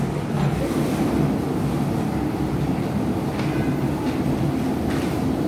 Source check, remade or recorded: recorded